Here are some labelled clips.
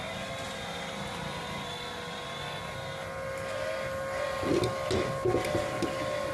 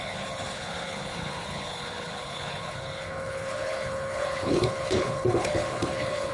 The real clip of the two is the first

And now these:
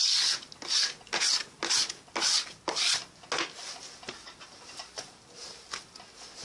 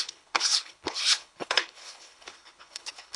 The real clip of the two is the first